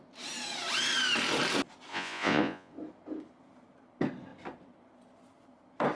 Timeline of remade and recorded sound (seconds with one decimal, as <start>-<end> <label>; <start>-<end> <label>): 0.0-1.9 recorded; 1.9-2.7 remade; 2.7-6.0 recorded